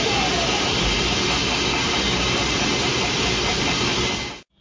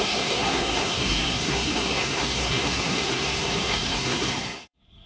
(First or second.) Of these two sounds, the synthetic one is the second